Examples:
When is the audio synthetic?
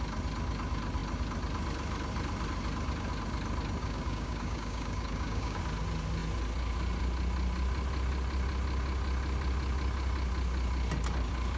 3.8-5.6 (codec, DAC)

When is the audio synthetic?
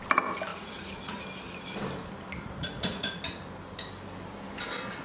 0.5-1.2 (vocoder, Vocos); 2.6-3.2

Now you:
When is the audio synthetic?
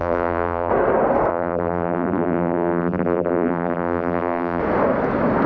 0.0-0.7 (vocoder, BigVGAN v2); 1.3-4.6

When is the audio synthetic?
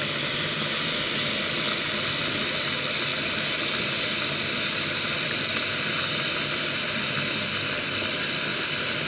3.1-7.0 (vocoder, BigVGAN v2); 8.5-9.1